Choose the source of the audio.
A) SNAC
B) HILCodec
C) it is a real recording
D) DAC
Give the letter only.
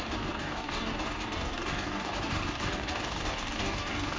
D